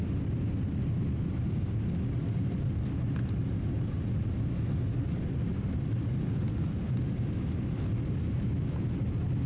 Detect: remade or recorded recorded